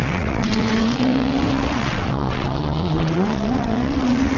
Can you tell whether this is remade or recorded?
remade